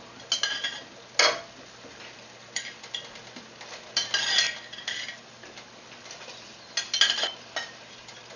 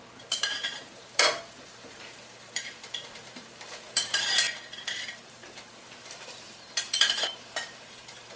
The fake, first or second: second